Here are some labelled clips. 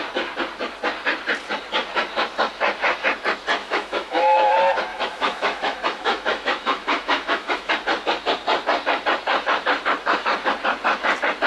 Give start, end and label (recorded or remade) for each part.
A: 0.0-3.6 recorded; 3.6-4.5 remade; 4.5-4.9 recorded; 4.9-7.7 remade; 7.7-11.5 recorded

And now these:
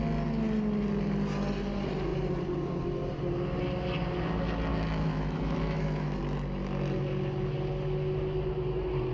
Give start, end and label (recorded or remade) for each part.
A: 0.0-4.7 recorded; 4.7-6.2 remade; 6.2-9.1 recorded